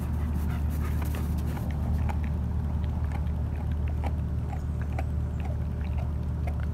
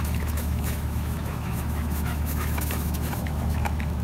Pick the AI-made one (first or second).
second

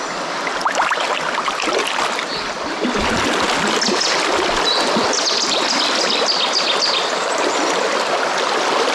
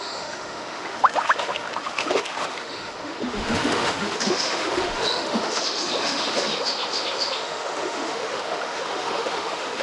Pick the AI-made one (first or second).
second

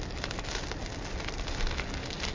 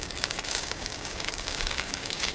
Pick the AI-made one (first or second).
second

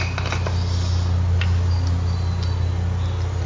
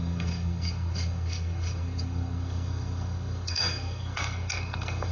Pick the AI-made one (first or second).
second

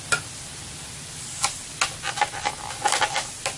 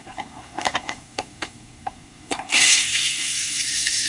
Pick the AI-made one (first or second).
second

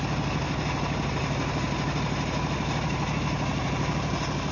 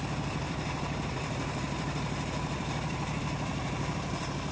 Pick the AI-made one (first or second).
second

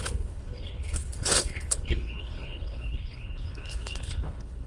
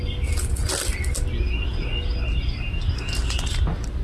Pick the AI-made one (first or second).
first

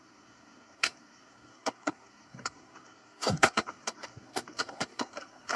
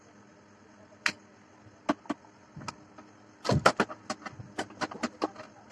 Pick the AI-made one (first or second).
first